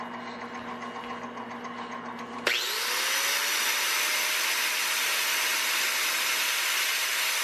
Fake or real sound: real